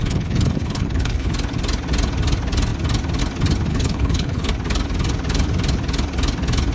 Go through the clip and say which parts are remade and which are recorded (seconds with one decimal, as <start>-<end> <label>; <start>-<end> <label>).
0.0-1.3 remade; 1.3-3.7 recorded; 3.7-4.5 remade; 4.5-6.7 recorded